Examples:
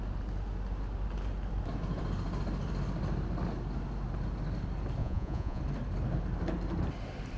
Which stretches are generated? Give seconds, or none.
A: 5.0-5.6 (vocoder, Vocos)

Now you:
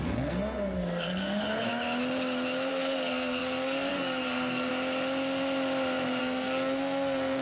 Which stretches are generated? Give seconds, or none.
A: 0.0-1.7 (codec, SNAC); 2.7-4.7; 6.2-7.4

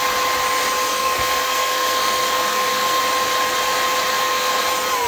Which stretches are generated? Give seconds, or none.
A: 0.9-3.0 (codec, SNAC); 4.1-4.6

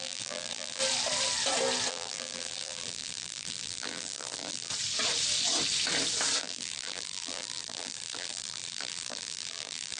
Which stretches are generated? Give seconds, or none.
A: 0.0-0.8 (vocoder, BigVGAN v2); 1.9-4.7; 6.4-10.0

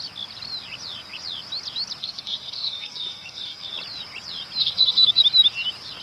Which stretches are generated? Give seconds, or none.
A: 2.0-3.7 (codec, SNAC); 4.6-5.2

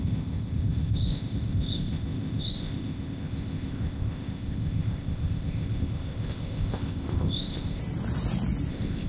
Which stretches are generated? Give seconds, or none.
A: 0.0-7.8 (codec, ZipCodec); 8.7-9.1

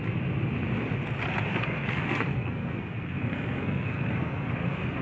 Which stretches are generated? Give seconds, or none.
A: 1.5-4.5 (codec, SNAC)